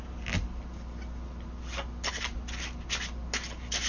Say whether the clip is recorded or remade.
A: recorded